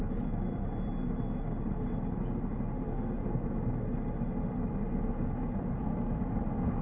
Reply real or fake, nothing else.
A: real